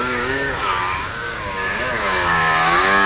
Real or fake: fake